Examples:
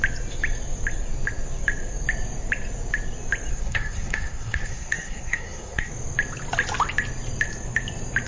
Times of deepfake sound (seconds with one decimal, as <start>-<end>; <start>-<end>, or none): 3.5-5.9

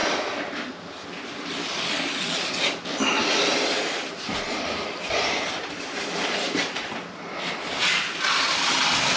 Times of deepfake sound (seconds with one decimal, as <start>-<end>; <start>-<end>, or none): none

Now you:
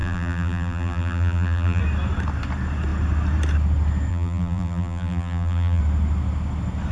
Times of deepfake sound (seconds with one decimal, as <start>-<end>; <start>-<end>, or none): 0.0-1.8; 4.1-5.8

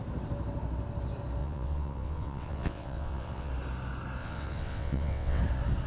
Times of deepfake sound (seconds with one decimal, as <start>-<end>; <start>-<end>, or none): 1.4-3.5; 4.2-5.4

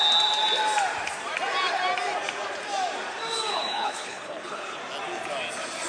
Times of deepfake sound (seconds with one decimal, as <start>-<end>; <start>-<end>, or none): 3.5-4.8

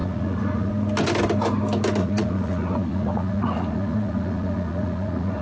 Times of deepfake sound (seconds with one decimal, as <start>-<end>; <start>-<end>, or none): 0.0-0.7; 2.0-5.4

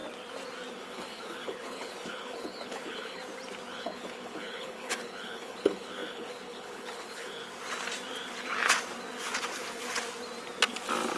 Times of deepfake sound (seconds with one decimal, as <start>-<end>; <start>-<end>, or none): 0.7-3.2; 3.7-7.4